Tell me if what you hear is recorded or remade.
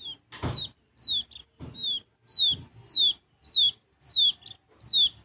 recorded